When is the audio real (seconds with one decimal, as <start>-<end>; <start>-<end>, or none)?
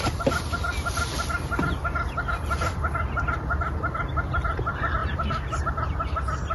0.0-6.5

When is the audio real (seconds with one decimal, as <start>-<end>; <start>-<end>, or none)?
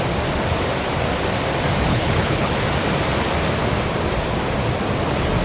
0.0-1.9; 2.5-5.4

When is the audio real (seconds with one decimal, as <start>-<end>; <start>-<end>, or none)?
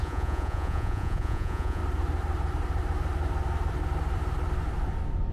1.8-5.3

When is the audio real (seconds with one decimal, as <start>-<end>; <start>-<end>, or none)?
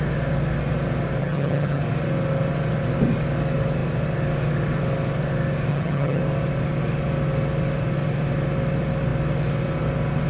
0.0-1.2; 1.8-5.7; 6.2-10.3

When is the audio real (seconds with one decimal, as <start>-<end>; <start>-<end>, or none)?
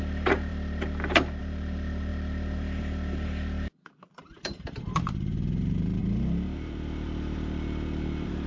0.5-1.4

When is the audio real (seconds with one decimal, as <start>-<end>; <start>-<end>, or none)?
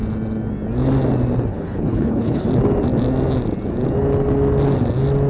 0.0-1.5; 2.5-5.3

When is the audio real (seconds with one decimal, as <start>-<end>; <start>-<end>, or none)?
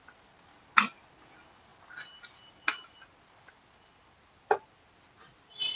0.0-5.8